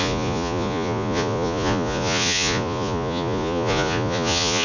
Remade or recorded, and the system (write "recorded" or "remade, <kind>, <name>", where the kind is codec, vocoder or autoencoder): remade, vocoder, Vocos